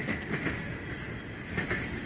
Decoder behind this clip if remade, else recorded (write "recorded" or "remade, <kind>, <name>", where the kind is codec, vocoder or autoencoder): recorded